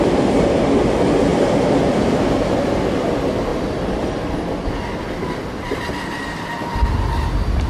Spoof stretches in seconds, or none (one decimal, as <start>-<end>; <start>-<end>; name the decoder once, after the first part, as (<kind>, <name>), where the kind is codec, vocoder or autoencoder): 1.3-2.2 (vocoder, BigVGAN v2)